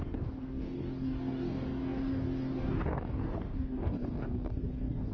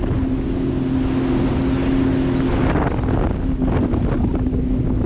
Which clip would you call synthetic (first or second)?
first